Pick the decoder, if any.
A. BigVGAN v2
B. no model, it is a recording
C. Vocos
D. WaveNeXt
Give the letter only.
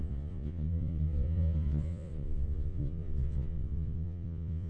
C